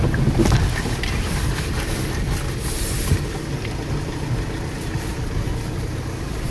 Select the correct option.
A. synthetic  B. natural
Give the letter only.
B